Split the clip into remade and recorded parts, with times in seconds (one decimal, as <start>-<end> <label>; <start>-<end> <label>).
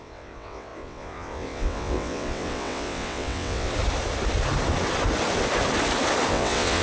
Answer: 0.0-3.7 remade; 3.7-6.3 recorded; 6.3-6.8 remade